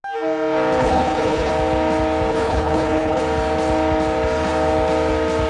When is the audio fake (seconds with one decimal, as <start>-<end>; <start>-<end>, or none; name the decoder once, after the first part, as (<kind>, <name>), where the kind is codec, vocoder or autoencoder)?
0.8-1.5 (codec, HILCodec); 2.3-3.2